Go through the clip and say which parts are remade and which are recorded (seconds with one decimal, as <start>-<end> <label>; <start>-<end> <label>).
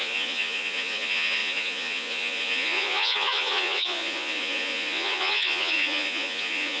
0.0-6.8 remade